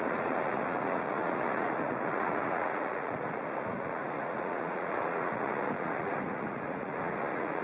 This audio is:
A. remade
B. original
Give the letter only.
A